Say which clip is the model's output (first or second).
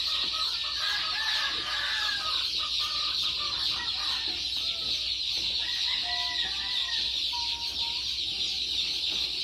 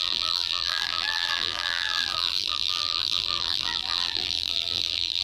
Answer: second